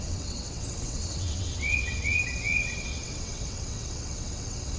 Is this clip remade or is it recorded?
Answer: remade